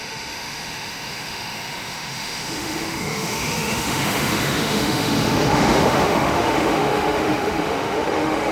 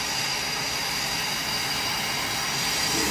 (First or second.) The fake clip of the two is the first